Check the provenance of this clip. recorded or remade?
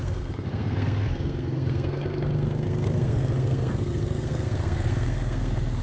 remade